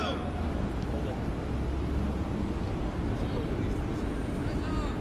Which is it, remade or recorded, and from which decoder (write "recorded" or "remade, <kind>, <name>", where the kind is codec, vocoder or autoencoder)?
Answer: recorded